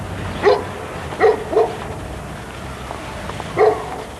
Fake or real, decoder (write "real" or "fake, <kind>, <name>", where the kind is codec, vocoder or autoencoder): real